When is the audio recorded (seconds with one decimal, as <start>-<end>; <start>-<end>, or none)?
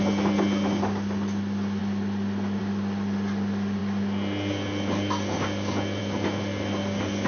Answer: 0.0-7.3